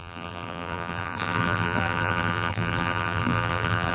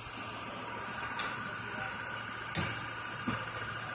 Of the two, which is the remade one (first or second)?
first